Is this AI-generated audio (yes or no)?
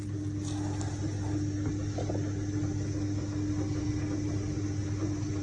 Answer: no